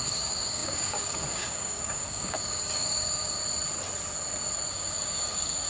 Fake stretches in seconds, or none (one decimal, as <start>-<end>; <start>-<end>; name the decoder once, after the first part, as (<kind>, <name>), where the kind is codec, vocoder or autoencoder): 0.0-3.4 (codec, DAC); 4.7-5.7